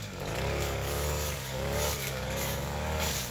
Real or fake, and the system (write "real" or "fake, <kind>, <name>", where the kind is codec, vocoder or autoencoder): fake, codec, DAC